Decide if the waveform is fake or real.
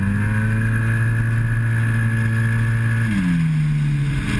real